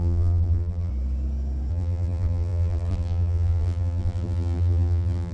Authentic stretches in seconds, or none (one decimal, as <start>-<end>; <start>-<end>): 0.9-1.7